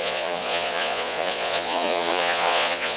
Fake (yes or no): yes